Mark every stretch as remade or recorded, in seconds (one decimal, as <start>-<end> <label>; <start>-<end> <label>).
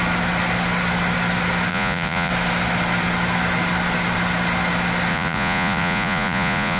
0.0-1.7 recorded; 1.7-2.3 remade; 2.3-5.1 recorded; 5.1-6.8 remade